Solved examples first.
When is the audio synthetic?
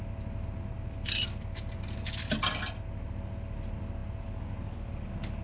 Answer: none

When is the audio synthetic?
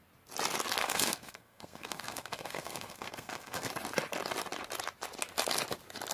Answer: 0.8-3.7 (codec, SNAC)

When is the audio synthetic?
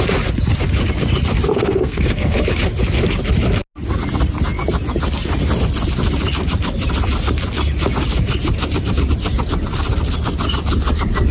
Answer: 1.5-2.4 (codec, SNAC)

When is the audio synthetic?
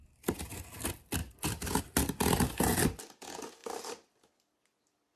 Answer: 1.2-1.8 (vocoder, BigVGAN v2); 3.6-4.2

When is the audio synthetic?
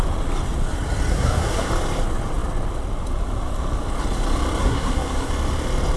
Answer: 1.1-1.7 (codec, SNAC); 4.6-5.3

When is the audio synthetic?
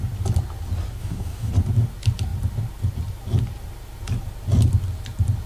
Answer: 1.0-1.5 (codec, DAC)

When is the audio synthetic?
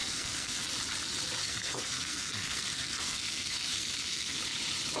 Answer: 0.0-0.6 (codec, SNAC); 1.4-4.4